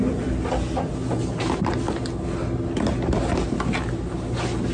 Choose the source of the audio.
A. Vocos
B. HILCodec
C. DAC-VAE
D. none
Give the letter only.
D